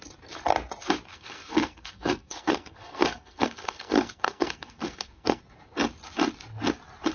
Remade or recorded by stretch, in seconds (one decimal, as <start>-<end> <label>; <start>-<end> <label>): 0.0-1.1 recorded; 1.1-5.4 remade; 5.4-7.1 recorded